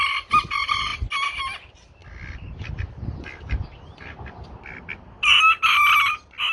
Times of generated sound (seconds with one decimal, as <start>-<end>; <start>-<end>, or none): none